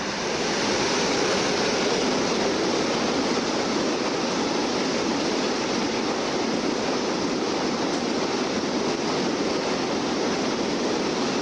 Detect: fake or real real